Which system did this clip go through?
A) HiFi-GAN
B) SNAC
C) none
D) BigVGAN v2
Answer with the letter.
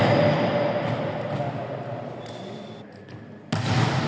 C